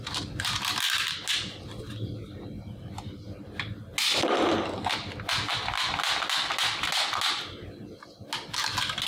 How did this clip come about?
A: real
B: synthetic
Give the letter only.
A